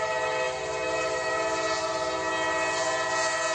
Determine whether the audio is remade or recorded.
recorded